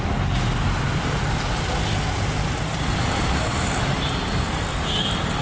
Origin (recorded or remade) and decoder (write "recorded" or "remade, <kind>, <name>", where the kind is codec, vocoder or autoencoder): recorded